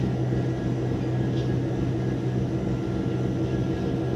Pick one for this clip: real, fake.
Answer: real